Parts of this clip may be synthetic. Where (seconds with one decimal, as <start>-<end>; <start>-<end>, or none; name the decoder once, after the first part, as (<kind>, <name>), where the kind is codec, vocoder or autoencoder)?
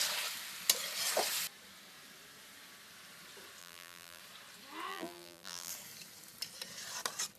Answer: 3.6-4.2 (vocoder, BigVGAN v2); 4.9-5.7